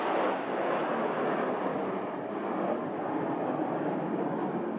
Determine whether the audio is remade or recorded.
recorded